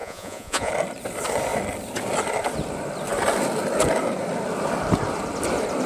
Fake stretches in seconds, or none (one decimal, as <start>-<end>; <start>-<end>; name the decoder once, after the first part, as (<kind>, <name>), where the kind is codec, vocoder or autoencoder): 0.0-0.7 (vocoder, Vocos)